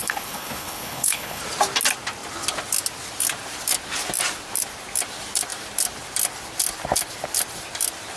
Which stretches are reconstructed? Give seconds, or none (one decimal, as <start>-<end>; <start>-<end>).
0.0-1.4